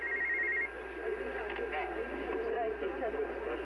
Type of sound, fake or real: real